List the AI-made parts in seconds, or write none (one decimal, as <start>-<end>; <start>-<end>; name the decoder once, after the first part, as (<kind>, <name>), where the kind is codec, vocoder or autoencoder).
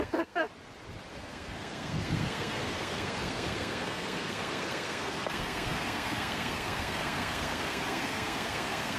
0.0-0.5 (codec, SNAC); 1.1-9.0